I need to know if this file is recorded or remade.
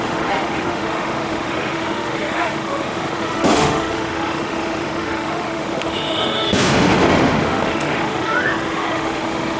remade